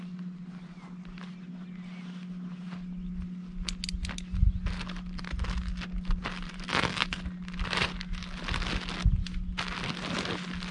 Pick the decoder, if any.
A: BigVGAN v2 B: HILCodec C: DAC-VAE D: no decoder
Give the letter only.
D